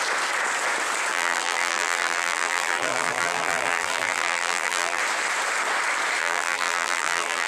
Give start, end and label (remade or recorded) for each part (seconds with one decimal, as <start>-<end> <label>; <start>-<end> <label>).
0.0-1.1 recorded; 1.1-5.0 remade; 5.0-6.2 recorded; 6.2-7.5 remade